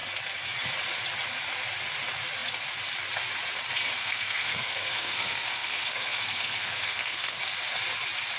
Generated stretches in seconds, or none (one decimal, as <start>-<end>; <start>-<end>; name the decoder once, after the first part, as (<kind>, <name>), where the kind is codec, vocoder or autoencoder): 4.0-7.4 (codec, SNAC)